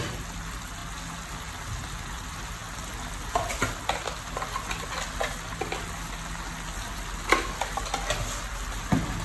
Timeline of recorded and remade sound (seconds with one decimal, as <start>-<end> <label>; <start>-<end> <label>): 0.0-9.2 recorded